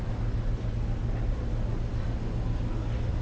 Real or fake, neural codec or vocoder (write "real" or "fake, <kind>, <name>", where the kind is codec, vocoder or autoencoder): real